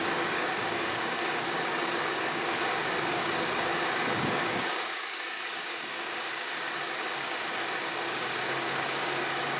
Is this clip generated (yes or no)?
yes